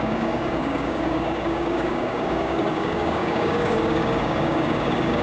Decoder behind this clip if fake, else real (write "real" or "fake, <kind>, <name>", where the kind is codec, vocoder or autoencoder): fake, codec, DAC